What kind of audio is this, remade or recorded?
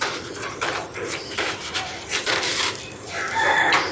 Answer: remade